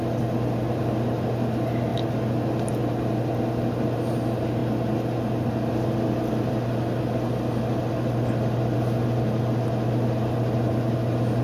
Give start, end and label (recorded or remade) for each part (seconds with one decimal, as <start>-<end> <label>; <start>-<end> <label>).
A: 0.0-11.4 recorded